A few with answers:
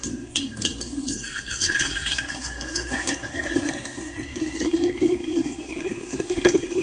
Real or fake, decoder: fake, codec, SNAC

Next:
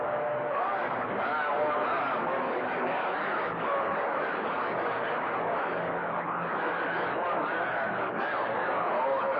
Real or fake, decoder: fake, codec, DAC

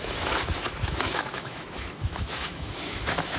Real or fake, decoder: fake, autoencoder, DAC-VAE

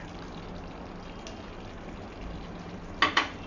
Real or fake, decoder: real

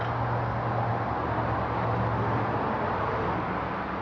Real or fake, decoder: real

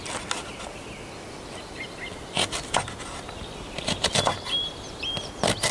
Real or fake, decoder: real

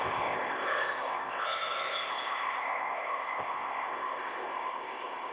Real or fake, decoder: fake, codec, ZipCodec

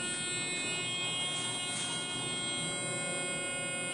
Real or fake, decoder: real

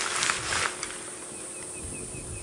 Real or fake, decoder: real